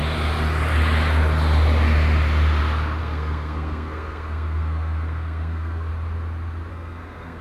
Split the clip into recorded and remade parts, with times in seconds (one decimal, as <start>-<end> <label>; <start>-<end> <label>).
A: 0.0-3.0 recorded; 3.0-5.9 remade; 5.9-6.7 recorded; 6.7-7.4 remade